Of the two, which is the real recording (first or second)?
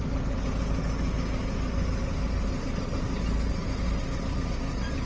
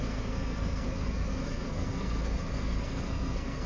first